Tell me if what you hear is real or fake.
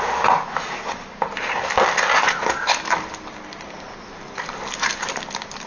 real